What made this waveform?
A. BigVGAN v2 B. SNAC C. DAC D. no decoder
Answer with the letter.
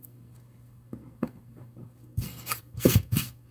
B